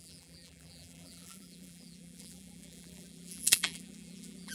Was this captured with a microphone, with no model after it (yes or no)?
no